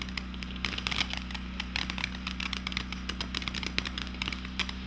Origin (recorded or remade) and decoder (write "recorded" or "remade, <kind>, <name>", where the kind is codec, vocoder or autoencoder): recorded